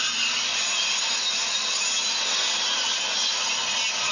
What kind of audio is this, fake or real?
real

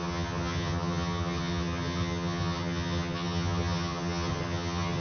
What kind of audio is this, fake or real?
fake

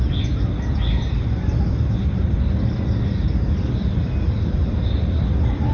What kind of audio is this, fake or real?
real